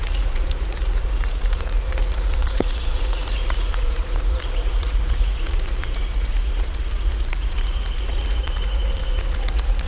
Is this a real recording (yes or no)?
no